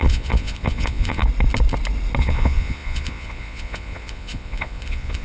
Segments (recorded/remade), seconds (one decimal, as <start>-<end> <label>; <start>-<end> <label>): 0.0-1.2 remade; 1.2-2.2 recorded; 2.2-5.2 remade